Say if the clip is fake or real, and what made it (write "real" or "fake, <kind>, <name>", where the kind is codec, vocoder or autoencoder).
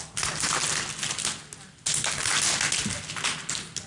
real